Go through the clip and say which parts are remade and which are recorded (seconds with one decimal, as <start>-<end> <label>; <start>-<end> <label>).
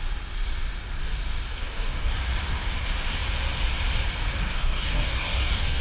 0.0-1.5 recorded; 1.5-2.1 remade; 2.1-4.5 recorded; 4.5-5.8 remade